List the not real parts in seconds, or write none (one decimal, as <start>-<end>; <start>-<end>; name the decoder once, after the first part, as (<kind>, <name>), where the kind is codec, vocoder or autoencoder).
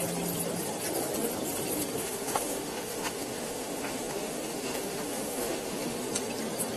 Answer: 2.0-6.1 (autoencoder, DAC-VAE)